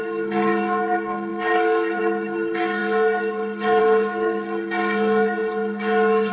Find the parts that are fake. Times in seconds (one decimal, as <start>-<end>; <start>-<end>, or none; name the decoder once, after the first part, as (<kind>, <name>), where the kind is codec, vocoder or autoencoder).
0.0-6.3 (codec, SNAC)